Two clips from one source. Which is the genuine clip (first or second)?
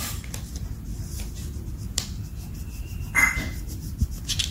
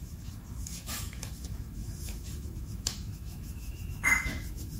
first